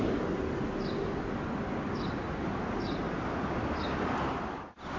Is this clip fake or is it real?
real